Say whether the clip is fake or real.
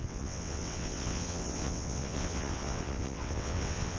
fake